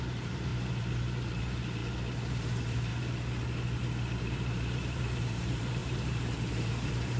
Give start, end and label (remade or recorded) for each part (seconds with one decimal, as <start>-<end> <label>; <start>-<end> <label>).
0.0-1.8 remade; 1.8-2.3 recorded; 2.3-2.9 remade; 2.9-4.2 recorded; 4.2-7.2 remade